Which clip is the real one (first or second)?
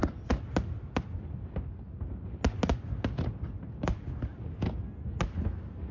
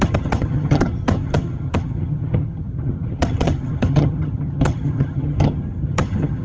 first